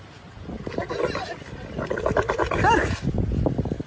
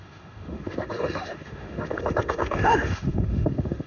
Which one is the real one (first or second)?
first